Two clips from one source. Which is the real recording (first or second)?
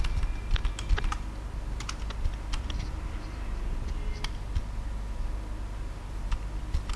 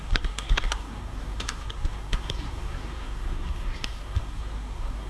first